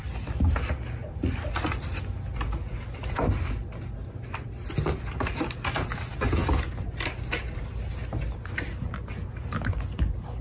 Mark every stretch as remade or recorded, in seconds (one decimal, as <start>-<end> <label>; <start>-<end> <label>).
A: 0.0-10.4 recorded

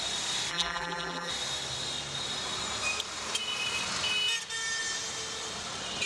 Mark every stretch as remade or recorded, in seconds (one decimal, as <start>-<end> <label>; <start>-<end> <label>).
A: 0.0-0.5 recorded; 0.5-1.3 remade; 1.3-6.1 recorded

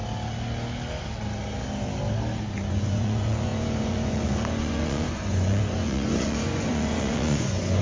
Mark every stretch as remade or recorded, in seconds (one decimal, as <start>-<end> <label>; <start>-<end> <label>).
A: 0.0-2.7 recorded; 2.7-7.8 remade

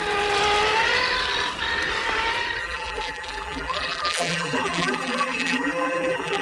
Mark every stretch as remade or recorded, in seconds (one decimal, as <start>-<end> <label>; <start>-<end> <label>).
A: 0.0-2.6 recorded; 2.6-6.4 remade

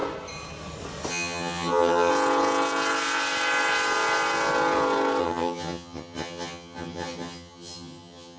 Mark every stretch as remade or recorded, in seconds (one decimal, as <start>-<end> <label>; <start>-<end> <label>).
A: 0.0-1.1 recorded; 1.1-2.1 remade; 2.1-5.2 recorded; 5.2-8.4 remade

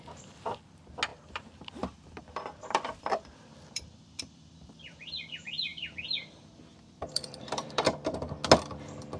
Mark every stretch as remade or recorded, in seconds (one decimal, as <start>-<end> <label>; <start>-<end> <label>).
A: 0.0-1.1 recorded; 1.1-5.3 remade; 5.3-5.7 recorded; 5.7-8.3 remade; 8.3-9.2 recorded